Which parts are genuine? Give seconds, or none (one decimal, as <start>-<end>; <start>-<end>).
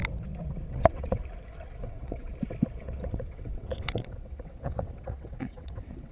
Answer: 0.0-0.7; 1.2-1.8; 2.3-2.8